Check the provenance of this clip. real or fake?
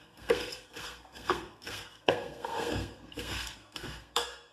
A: fake